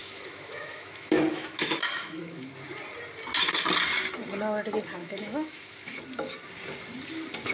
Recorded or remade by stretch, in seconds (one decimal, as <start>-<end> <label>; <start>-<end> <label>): 0.0-2.5 remade; 2.5-5.0 recorded; 5.0-6.0 remade; 6.0-7.5 recorded